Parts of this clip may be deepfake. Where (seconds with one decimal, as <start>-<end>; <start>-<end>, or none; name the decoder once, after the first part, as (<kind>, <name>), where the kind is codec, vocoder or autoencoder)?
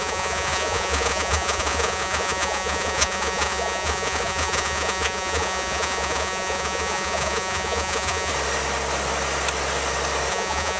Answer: 0.0-8.3 (vocoder, Vocos); 10.3-10.8